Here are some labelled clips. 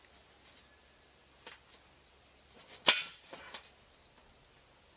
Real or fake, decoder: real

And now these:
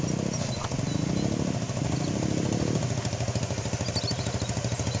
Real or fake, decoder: real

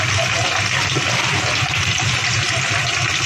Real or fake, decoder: fake, vocoder, BigVGAN v2